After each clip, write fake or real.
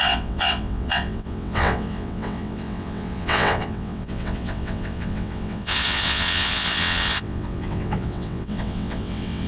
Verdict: fake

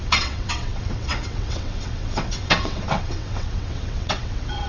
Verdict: fake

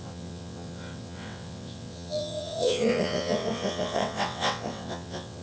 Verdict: fake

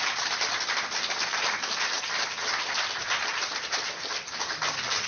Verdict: real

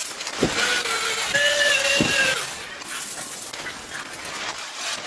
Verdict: real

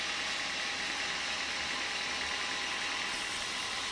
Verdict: real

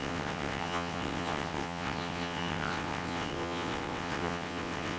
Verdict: fake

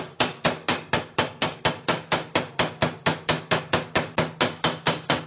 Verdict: real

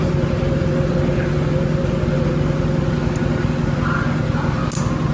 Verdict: real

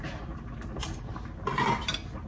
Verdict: real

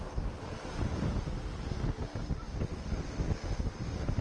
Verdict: real